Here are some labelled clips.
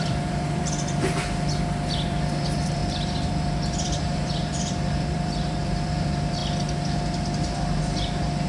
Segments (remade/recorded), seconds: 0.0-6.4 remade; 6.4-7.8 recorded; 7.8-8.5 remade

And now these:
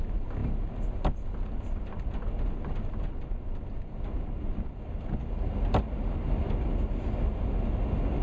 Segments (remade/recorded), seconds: 0.0-8.2 recorded